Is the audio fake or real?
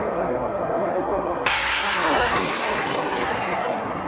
fake